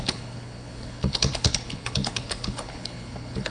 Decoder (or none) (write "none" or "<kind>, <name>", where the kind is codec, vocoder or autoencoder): codec, HILCodec